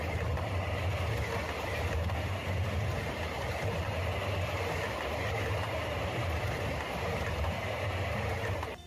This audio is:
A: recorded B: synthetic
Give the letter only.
A